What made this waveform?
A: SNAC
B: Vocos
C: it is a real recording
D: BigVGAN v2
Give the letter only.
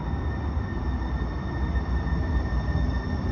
C